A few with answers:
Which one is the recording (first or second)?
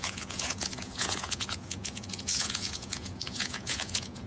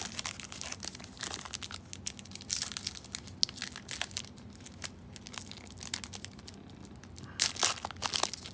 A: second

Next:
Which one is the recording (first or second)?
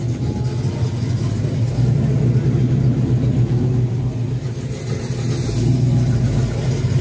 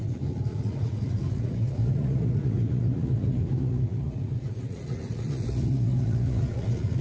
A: first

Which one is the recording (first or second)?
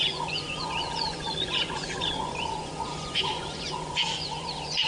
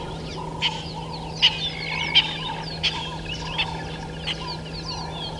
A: second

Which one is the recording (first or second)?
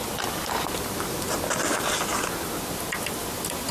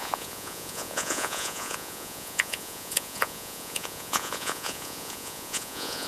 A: first